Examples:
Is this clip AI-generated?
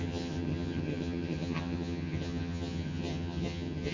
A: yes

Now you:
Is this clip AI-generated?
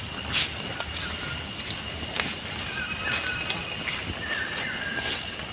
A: no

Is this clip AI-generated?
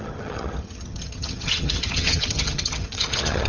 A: yes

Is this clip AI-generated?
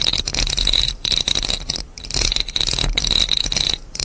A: no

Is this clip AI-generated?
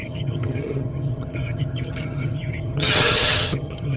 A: yes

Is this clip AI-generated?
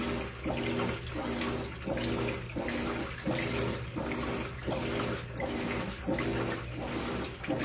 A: no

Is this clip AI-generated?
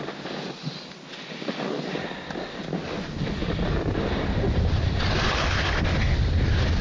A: no